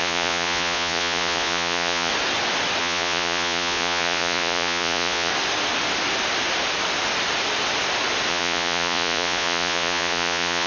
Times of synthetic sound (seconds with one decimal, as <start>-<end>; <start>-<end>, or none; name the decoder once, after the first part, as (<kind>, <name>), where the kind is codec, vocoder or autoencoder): 0.0-2.1 (vocoder, Vocos); 2.8-5.3; 8.3-10.7